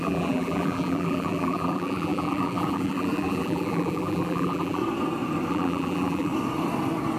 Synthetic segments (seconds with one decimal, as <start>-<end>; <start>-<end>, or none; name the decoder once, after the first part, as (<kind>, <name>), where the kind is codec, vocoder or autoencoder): 0.0-4.8 (vocoder, BigVGAN v2); 5.5-6.3